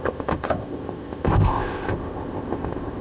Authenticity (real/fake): fake